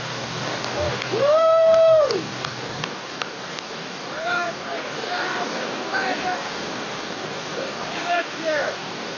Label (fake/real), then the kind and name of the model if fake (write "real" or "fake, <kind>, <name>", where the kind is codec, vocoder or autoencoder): fake, codec, DAC